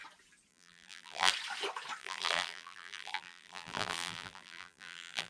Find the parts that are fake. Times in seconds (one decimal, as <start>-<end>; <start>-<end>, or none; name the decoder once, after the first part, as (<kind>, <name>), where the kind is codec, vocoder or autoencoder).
0.5-1.3 (vocoder, BigVGAN v2); 2.0-5.3